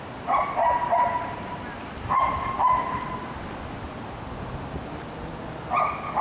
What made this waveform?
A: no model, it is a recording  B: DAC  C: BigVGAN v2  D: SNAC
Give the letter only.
A